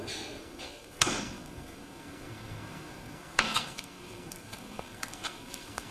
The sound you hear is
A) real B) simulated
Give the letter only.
B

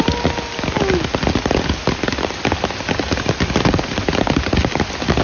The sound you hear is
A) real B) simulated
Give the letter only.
A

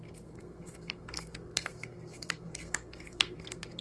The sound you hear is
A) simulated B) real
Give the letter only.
A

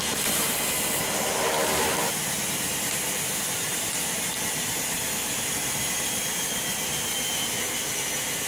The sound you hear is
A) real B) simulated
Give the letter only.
B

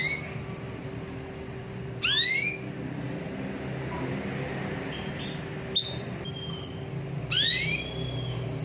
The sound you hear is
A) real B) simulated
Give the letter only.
A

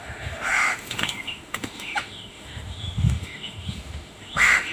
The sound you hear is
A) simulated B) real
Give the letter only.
A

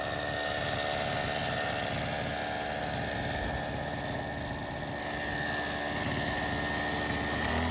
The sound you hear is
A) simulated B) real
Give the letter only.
B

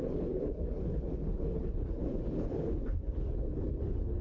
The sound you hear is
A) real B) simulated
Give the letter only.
B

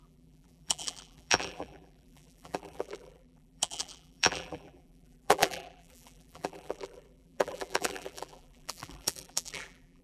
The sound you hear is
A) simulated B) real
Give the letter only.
A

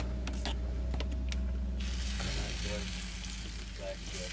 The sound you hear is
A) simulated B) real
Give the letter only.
B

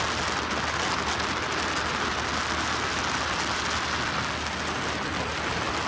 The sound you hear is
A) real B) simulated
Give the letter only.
A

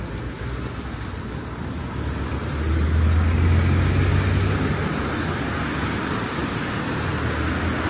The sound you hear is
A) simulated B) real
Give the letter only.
B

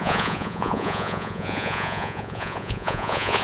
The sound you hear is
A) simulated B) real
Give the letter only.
A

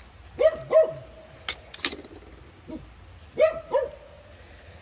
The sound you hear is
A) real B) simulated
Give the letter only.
A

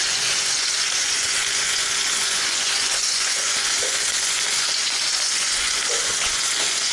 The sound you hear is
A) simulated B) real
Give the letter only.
A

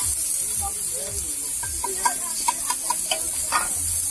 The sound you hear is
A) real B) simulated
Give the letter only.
A